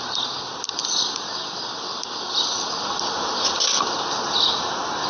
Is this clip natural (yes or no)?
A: yes